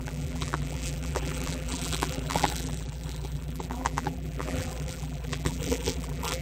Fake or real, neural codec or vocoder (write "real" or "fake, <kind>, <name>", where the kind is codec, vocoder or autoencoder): fake, vocoder, BigVGAN v2